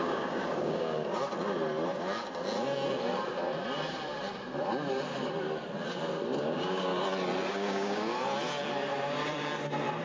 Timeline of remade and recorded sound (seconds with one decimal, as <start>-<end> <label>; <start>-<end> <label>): 0.0-1.2 remade; 1.2-6.4 recorded; 6.4-6.9 remade; 6.9-7.5 recorded; 7.5-8.1 remade; 8.1-10.0 recorded